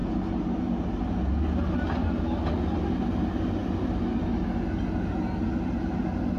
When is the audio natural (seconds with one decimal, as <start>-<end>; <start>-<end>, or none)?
0.0-6.4